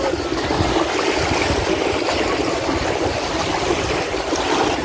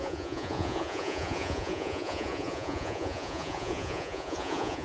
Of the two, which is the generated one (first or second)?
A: second